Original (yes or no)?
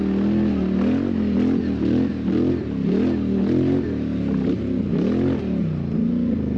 yes